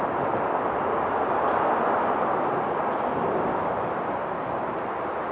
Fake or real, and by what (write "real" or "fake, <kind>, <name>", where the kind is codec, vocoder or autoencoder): real